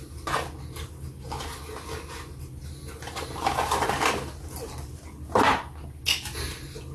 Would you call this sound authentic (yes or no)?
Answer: yes